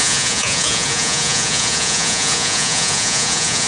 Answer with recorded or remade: remade